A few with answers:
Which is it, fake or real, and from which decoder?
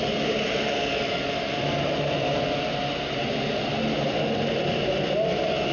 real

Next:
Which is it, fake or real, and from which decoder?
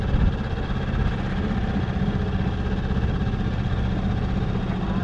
real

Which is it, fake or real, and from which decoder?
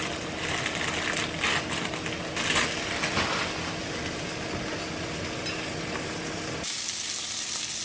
real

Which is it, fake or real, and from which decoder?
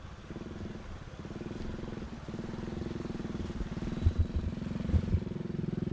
real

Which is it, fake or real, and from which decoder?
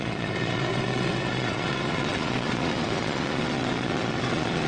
fake, vocoder, Vocos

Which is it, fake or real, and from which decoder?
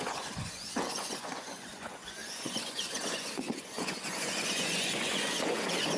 fake, vocoder, Vocos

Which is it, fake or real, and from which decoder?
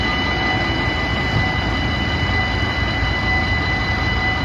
real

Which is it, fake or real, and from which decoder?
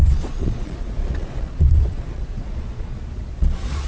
fake, vocoder, Vocos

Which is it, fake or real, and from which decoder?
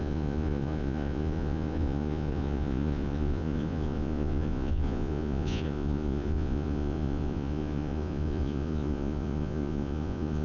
fake, vocoder, Vocos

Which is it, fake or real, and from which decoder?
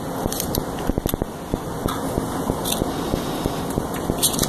real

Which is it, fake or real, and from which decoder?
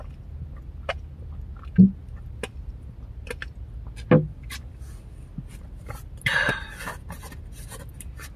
real